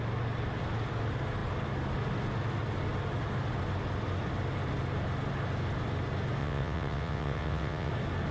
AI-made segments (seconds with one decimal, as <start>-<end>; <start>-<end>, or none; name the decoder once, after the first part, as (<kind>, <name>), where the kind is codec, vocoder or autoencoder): 6.4-7.9 (vocoder, WaveNeXt)